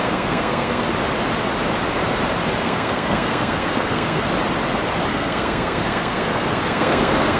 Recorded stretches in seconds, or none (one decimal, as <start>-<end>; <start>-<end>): 0.8-2.6; 4.3-5.1